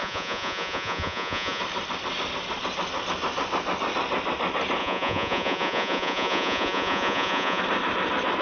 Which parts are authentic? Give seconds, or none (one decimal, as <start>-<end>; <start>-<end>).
1.6-4.8; 7.6-8.4